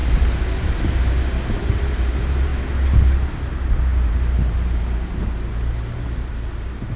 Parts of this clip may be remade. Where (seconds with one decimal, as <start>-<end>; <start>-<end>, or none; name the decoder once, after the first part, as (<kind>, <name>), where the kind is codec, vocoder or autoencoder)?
1.6-2.5 (vocoder, BigVGAN v2); 4.1-7.0